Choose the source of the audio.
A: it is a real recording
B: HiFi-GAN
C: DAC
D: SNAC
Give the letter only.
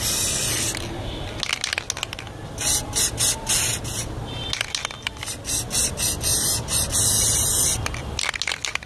A